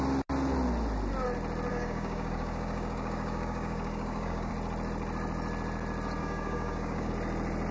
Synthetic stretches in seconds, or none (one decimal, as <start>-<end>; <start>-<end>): 1.7-4.5; 6.2-7.1